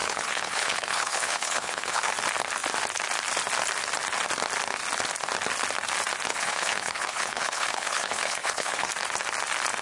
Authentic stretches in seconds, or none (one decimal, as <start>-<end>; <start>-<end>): 2.1-6.3; 8.9-9.8